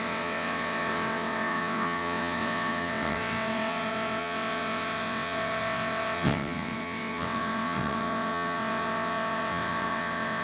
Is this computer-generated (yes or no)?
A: yes